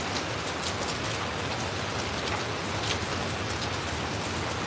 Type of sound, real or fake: real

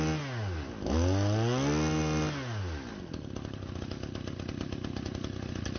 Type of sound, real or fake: real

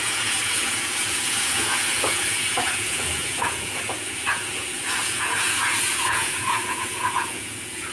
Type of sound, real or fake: fake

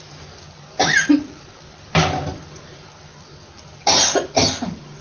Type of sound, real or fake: real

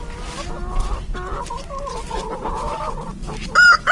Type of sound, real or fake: real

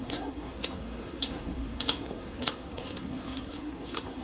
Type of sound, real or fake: fake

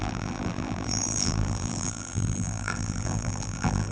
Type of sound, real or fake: fake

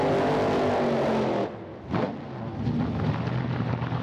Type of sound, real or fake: real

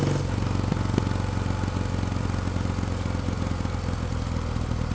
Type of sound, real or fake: real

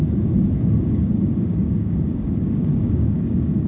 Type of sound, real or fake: fake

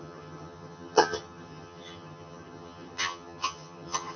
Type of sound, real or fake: fake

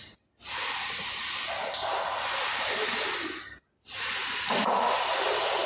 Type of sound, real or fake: real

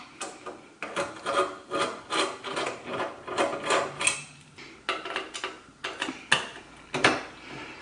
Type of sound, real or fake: real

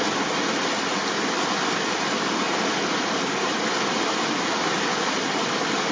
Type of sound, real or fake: real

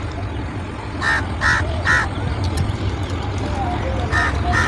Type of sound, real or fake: real